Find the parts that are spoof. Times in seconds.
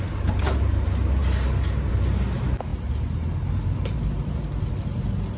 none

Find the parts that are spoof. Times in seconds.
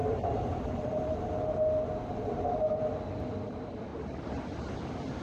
0.0-1.3 (vocoder, BigVGAN v2); 3.9-4.4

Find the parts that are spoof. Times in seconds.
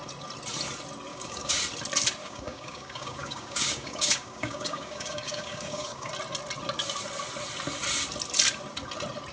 1.1-1.6 (codec, DAC); 2.2-6.1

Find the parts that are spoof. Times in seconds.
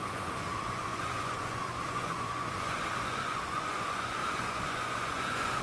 0.0-5.6 (vocoder, Vocos)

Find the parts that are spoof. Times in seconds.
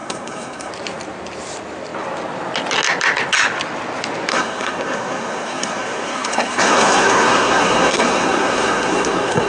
0.0-0.7 (codec, SNAC); 4.3-9.5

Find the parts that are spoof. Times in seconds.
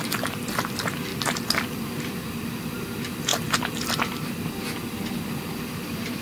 0.0-1.1 (vocoder, BigVGAN v2); 1.6-6.2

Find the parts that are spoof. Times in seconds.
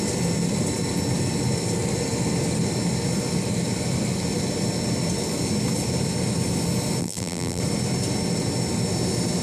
7.0-7.6 (vocoder, BigVGAN v2)